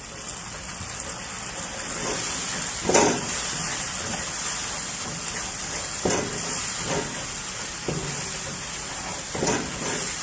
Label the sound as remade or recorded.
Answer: recorded